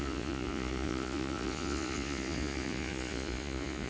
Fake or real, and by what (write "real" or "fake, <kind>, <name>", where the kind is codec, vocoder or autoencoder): fake, vocoder, Vocos